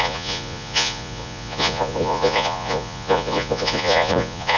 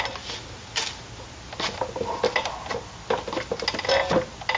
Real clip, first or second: second